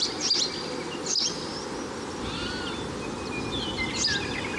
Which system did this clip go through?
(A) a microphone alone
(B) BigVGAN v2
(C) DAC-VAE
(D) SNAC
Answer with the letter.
A